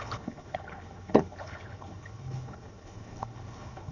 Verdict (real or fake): fake